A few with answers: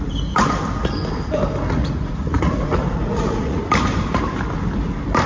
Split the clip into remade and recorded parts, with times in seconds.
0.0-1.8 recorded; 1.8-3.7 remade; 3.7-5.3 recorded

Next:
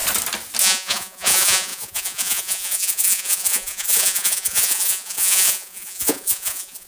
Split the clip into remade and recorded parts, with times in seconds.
0.0-0.6 recorded; 0.6-6.9 remade

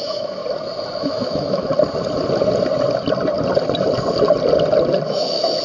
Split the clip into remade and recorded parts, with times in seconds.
0.0-0.4 remade; 0.4-1.0 recorded; 1.0-1.7 remade; 1.7-5.1 recorded; 5.1-5.6 remade